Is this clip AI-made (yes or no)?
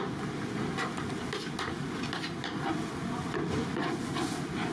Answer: no